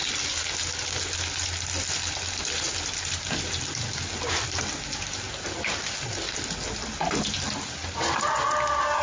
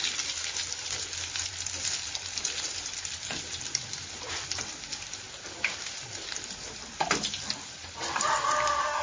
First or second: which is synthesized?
second